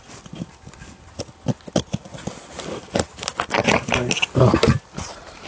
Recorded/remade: recorded